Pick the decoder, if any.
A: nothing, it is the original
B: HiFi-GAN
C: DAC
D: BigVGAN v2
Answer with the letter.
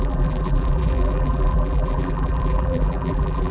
D